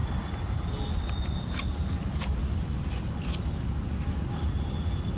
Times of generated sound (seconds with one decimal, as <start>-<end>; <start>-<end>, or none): none